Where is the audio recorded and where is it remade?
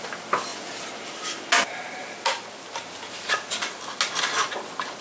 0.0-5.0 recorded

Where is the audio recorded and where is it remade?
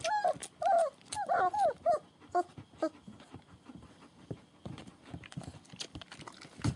0.0-6.8 recorded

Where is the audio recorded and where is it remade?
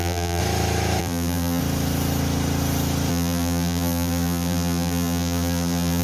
0.0-0.4 remade; 0.4-1.0 recorded; 1.0-1.6 remade; 1.6-3.1 recorded; 3.1-6.0 remade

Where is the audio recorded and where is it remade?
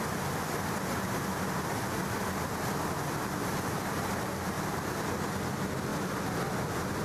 0.0-7.0 recorded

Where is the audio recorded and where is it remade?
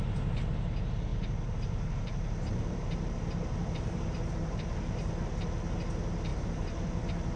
0.0-1.1 recorded; 1.1-5.1 remade; 5.1-6.3 recorded; 6.3-7.0 remade; 7.0-7.4 recorded